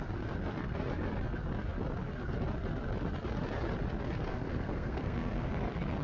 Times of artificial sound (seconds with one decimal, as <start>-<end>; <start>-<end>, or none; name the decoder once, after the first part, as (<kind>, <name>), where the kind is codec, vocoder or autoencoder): 4.3-5.5 (codec, SNAC)